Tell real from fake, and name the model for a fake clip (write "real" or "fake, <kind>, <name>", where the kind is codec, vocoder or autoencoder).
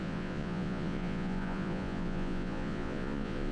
fake, vocoder, Vocos